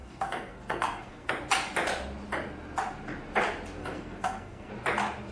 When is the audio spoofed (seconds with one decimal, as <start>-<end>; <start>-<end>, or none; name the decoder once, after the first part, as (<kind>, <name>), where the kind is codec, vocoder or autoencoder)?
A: 0.0-1.3 (codec, SNAC); 3.8-4.7